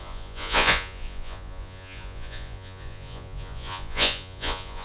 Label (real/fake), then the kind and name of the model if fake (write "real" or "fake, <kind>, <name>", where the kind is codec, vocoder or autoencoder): fake, vocoder, Vocos